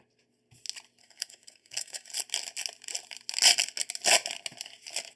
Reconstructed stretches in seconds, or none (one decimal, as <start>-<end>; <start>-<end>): 1.0-2.1